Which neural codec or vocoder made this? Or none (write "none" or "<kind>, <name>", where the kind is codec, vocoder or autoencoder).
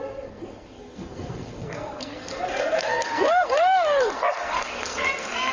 codec, SNAC